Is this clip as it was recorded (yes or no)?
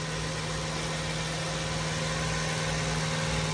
yes